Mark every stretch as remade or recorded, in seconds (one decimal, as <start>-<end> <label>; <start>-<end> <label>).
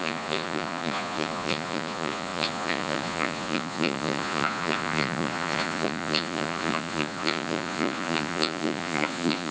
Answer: 0.0-9.5 remade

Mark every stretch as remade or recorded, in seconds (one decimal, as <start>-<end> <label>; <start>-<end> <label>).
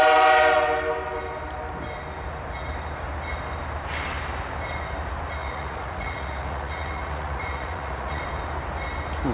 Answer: 0.0-5.4 recorded; 5.4-8.2 remade; 8.2-9.3 recorded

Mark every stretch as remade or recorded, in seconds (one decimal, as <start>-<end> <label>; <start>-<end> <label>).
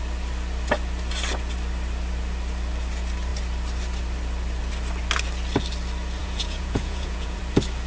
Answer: 0.0-6.2 recorded; 6.2-7.4 remade; 7.4-7.9 recorded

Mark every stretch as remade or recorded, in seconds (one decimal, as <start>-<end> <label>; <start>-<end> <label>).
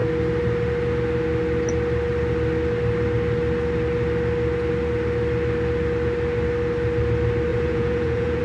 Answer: 0.0-7.5 recorded; 7.5-8.4 remade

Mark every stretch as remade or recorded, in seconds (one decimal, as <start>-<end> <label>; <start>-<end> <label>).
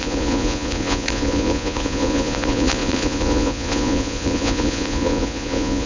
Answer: 0.0-5.9 remade